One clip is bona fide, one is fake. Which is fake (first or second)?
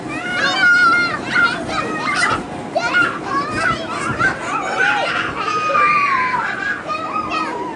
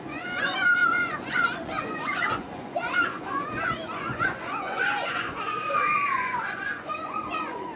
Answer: second